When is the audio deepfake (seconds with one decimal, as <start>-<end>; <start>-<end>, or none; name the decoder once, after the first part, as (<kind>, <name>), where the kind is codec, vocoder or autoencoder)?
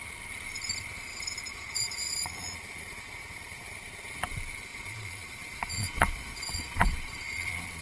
1.5-3.7 (vocoder, Vocos); 4.7-7.8